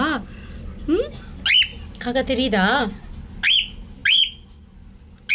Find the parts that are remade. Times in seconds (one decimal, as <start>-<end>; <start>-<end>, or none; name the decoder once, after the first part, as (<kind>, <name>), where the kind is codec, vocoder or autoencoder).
none